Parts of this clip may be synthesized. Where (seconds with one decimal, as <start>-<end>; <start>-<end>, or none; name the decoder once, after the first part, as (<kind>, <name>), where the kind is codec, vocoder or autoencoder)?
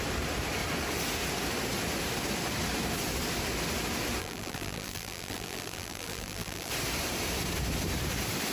4.2-6.7 (vocoder, BigVGAN v2)